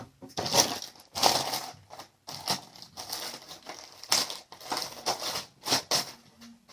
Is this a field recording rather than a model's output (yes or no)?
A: yes